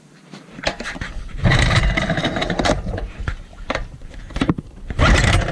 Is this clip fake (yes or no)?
yes